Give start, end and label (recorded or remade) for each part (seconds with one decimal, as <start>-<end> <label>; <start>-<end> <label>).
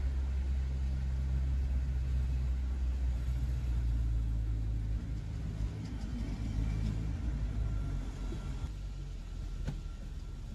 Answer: 0.0-10.5 recorded